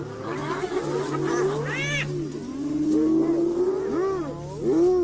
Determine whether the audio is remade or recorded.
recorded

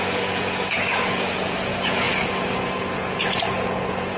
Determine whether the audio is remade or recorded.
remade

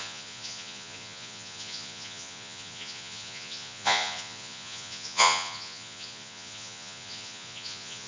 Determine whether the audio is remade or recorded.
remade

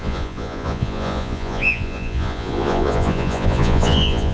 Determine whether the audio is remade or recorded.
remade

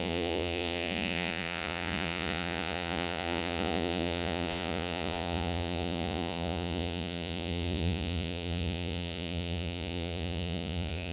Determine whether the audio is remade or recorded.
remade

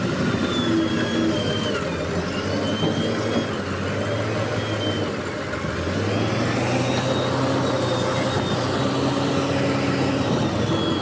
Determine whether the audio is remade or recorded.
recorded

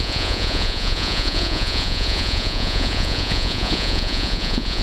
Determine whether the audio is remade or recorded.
remade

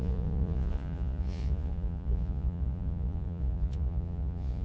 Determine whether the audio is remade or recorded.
remade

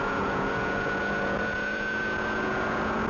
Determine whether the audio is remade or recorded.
remade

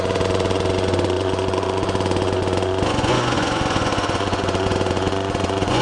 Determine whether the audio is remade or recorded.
remade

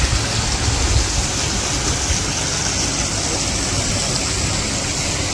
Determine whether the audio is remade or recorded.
recorded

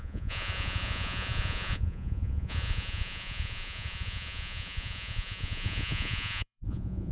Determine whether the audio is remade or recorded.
remade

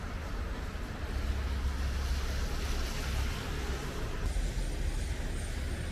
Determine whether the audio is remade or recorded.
recorded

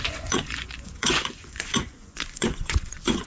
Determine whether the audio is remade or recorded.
remade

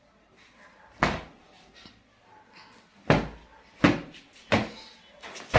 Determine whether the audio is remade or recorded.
recorded